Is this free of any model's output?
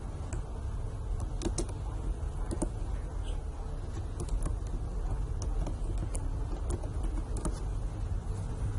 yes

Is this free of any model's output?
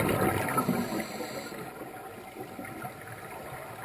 yes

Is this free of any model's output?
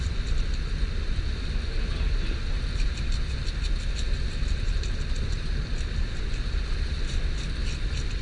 yes